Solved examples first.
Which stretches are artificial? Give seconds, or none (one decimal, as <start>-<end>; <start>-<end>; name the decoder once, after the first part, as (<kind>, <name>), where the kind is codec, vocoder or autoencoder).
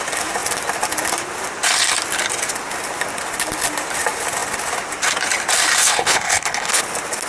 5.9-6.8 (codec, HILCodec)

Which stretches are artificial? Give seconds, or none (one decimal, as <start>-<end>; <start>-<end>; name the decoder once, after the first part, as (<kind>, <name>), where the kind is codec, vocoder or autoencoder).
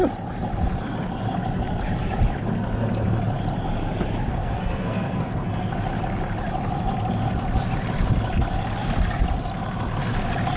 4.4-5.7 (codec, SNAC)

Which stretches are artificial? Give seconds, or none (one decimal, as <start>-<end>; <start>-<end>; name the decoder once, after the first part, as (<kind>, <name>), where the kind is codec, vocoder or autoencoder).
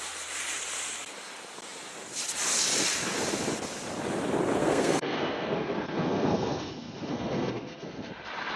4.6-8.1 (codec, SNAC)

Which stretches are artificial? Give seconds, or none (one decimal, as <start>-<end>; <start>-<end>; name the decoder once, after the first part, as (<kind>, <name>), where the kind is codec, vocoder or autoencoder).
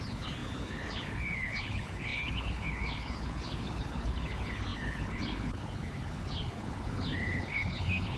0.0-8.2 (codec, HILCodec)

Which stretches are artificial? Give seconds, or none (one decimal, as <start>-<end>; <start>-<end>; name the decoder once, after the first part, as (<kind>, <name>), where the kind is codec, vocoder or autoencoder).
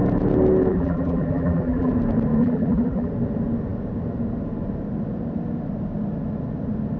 0.7-1.9 (vocoder, BigVGAN v2); 2.4-3.1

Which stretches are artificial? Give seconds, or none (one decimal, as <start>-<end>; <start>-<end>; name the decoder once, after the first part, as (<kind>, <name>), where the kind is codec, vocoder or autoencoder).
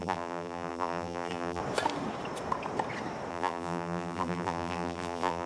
0.0-1.6 (vocoder, BigVGAN v2); 3.3-5.5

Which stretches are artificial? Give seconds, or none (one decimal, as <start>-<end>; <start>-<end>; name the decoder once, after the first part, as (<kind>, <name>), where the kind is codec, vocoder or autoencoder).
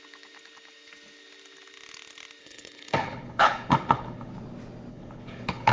2.4-4.3 (codec, HILCodec); 4.9-5.7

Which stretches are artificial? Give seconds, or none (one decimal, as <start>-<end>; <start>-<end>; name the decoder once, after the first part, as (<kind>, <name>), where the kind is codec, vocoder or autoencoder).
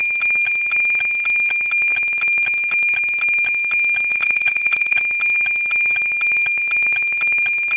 4.1-5.0 (vocoder, Vocos)